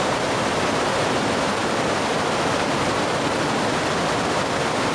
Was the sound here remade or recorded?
recorded